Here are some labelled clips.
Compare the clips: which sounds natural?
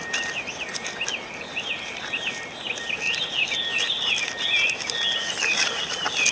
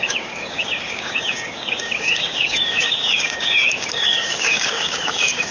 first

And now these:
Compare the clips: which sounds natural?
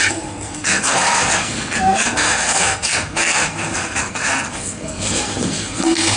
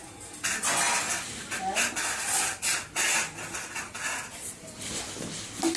second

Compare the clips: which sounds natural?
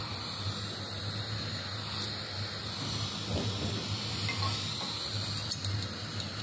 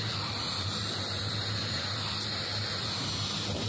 first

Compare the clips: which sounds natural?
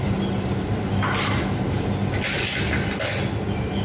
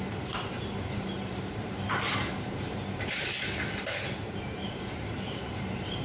first